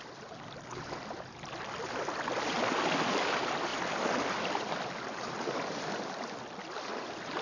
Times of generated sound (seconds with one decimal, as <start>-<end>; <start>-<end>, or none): none